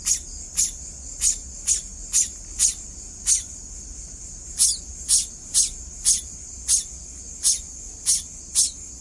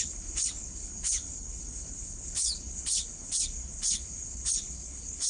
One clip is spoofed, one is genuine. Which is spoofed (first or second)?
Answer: second